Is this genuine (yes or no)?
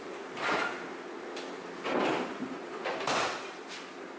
yes